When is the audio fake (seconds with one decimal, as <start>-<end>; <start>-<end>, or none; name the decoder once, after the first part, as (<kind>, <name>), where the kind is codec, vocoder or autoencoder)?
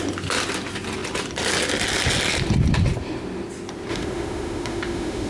3.9-5.3 (autoencoder, DAC-VAE)